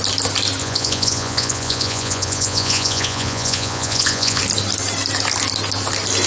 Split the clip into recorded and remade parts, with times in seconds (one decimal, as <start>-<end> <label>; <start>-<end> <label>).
0.0-0.6 recorded; 0.6-4.4 remade; 4.4-6.3 recorded